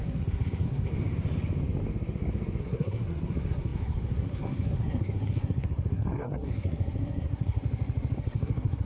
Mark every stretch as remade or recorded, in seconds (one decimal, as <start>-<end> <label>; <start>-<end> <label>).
0.0-0.9 remade; 0.9-2.6 recorded; 2.6-7.6 remade; 7.6-8.2 recorded; 8.2-8.9 remade